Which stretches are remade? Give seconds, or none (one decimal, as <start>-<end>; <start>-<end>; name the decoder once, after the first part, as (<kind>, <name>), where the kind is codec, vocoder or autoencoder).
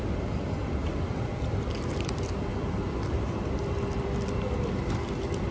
0.8-2.1 (vocoder, BigVGAN v2); 2.5-5.5